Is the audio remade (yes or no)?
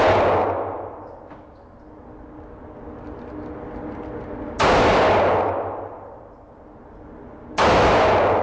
no